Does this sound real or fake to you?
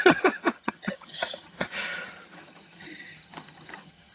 fake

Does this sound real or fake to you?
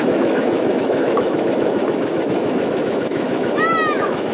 fake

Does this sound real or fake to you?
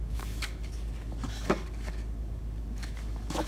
fake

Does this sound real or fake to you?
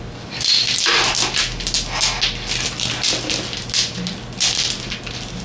real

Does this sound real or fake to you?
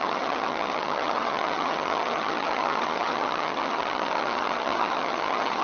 fake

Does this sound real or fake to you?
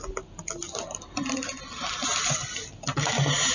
real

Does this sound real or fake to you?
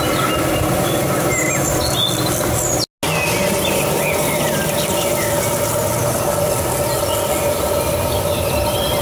real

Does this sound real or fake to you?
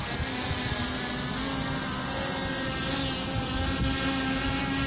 real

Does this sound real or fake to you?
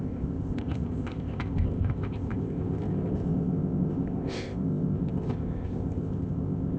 fake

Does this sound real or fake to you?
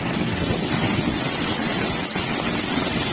fake